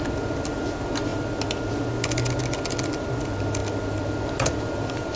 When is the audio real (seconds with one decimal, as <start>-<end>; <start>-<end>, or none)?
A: 0.0-5.2